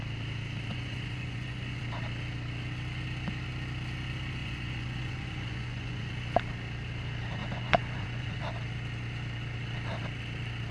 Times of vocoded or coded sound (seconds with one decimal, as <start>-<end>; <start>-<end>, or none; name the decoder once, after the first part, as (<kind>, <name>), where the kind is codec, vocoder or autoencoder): 0.7-1.8 (vocoder, Vocos); 4.4-6.1; 7.4-8.4